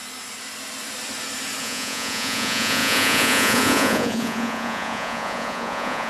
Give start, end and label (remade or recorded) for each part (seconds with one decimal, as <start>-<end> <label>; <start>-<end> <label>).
0.0-1.6 recorded; 1.6-6.1 remade